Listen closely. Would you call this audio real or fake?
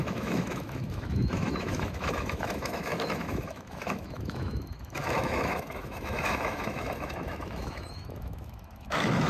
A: fake